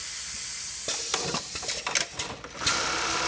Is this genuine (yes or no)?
yes